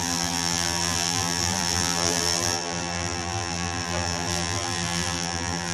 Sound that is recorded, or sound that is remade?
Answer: remade